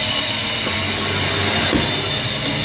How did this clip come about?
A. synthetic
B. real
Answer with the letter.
B